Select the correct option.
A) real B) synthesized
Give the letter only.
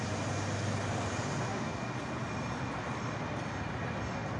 A